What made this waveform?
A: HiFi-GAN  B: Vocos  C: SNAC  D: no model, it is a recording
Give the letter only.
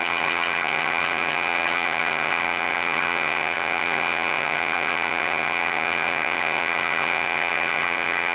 A